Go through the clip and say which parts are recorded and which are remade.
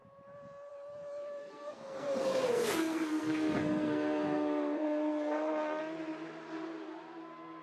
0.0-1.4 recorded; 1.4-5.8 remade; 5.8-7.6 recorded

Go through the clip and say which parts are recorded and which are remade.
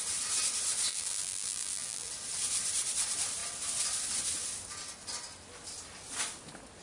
0.0-0.9 recorded; 0.9-2.1 remade; 2.1-6.8 recorded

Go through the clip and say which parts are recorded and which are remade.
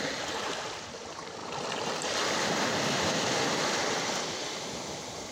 0.0-1.4 recorded; 1.4-4.6 remade; 4.6-5.3 recorded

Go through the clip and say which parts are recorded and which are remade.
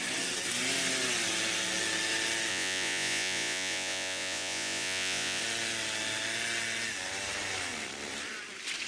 0.0-2.5 recorded; 2.5-5.4 remade; 5.4-8.9 recorded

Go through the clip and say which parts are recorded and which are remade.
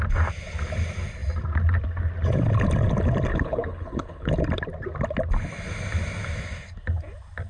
0.0-3.3 recorded; 3.3-4.3 remade; 4.3-7.5 recorded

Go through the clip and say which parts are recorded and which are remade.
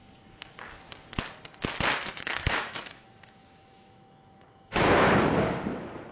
0.0-2.1 recorded; 2.1-5.1 remade; 5.1-6.1 recorded